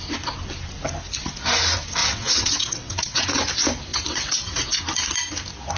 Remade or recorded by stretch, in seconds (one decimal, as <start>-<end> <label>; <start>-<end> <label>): 0.0-2.0 recorded; 2.0-3.2 remade; 3.2-3.9 recorded; 3.9-4.8 remade; 4.8-5.8 recorded

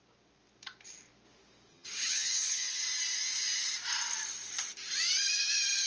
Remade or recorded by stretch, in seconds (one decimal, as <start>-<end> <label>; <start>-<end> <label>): 0.0-1.7 recorded; 1.7-2.8 remade; 2.8-5.9 recorded

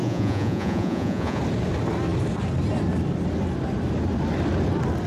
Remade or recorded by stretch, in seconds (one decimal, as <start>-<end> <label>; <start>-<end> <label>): 0.0-1.4 remade; 1.4-5.1 recorded

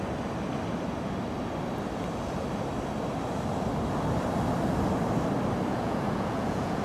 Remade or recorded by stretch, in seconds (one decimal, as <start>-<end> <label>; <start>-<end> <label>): 0.0-5.7 recorded; 5.7-6.8 remade

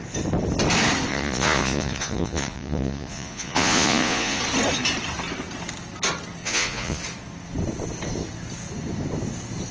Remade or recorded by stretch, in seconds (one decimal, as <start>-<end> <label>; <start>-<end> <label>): 0.0-1.1 recorded; 1.1-4.4 remade; 4.4-6.4 recorded; 6.4-7.0 remade; 7.0-9.7 recorded